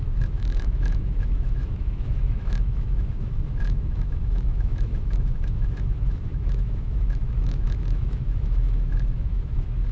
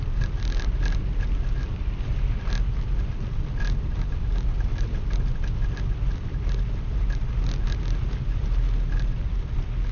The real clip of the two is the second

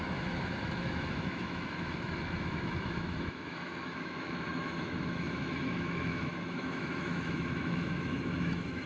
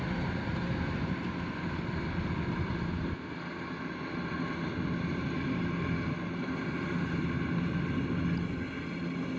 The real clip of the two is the second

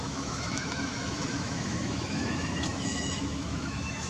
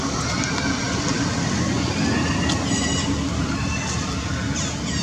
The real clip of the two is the second